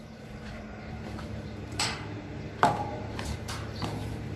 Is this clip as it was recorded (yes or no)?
no